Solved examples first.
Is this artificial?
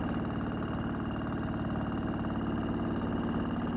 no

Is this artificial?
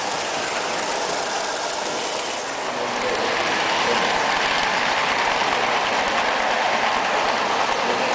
no